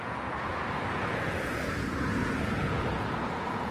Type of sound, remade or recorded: remade